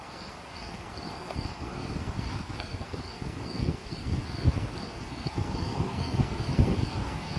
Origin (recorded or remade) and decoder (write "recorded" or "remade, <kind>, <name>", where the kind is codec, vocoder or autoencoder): remade, codec, SNAC